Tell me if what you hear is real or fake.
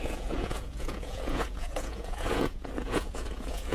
fake